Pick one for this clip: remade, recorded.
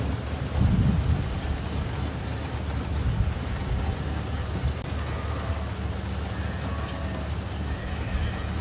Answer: recorded